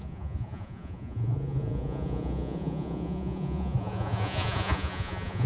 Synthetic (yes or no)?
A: yes